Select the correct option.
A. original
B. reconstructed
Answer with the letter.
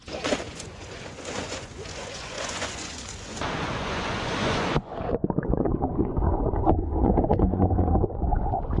B